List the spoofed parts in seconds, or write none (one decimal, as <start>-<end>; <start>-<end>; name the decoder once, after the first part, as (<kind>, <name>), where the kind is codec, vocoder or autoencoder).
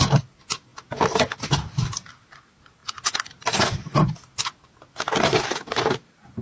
none